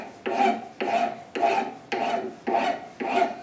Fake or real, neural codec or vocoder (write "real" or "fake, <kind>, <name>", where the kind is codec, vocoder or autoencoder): real